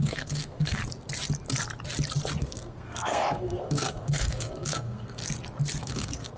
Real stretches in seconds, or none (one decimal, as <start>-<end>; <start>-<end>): 0.8-2.4; 5.2-5.8